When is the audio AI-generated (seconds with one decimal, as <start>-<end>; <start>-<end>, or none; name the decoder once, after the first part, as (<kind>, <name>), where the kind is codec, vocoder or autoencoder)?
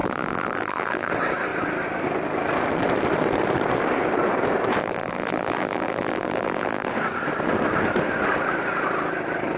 0.0-1.1 (vocoder, BigVGAN v2); 4.8-6.9